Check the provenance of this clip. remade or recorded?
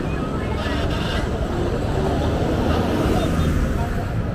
recorded